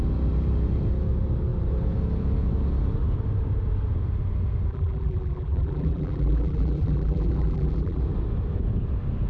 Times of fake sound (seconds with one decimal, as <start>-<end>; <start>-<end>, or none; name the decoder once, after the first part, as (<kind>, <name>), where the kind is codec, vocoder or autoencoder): 4.7-8.0 (vocoder, BigVGAN v2)

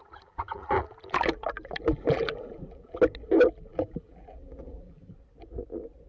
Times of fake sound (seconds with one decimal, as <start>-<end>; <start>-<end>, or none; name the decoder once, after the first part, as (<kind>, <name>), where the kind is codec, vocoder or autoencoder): 0.0-3.0 (vocoder, BigVGAN v2); 3.7-5.1

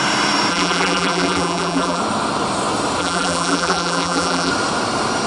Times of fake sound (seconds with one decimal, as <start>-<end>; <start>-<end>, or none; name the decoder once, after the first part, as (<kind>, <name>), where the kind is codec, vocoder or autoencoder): 0.5-2.0 (vocoder, BigVGAN v2); 3.0-4.5

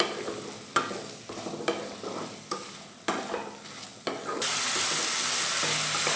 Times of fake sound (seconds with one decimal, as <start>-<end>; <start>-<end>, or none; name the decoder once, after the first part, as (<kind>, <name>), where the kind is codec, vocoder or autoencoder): none

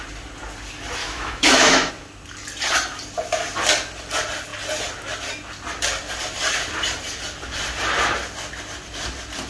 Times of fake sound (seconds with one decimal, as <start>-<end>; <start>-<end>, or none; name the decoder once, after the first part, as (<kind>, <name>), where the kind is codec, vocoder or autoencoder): 1.0-1.9 (autoencoder, DAC-VAE)

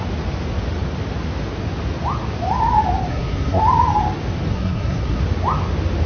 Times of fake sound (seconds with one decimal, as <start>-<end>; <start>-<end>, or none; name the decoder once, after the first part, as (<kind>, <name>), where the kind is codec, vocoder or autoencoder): 3.1-3.6 (codec, SNAC); 4.5-5.2